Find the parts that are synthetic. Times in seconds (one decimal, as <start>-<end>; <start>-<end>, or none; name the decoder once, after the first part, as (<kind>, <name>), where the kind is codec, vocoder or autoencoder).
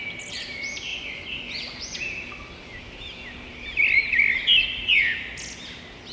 0.9-2.0 (vocoder, Vocos)